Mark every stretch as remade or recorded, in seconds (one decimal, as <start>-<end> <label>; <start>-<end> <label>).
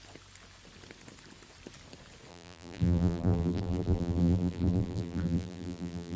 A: 0.0-2.3 recorded; 2.3-6.2 remade